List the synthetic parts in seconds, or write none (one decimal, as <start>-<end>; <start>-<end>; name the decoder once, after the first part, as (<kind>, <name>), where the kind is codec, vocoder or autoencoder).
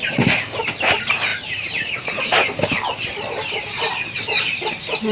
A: 0.0-5.1 (vocoder, BigVGAN v2)